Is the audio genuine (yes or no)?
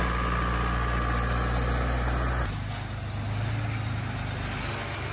yes